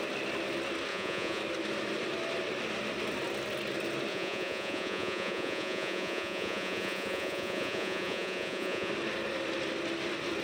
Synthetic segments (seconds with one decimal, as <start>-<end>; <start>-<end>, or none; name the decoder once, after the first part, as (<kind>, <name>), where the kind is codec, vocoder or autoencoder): 0.9-1.4 (vocoder, Vocos); 4.1-8.9